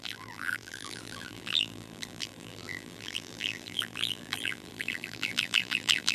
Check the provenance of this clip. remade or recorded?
remade